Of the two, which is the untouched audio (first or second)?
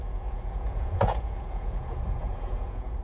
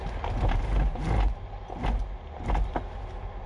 second